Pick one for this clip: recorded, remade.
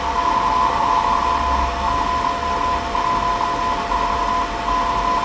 recorded